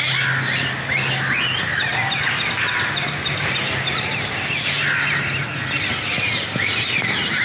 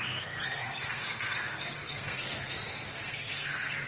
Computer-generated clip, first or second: second